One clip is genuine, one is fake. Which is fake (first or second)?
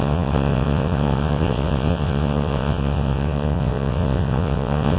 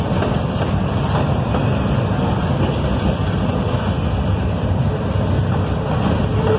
first